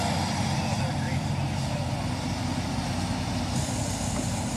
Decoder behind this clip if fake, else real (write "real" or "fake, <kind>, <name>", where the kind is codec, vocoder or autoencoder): real